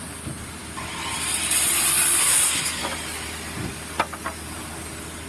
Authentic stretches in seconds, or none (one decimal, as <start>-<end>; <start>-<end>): 0.0-2.2; 2.8-5.3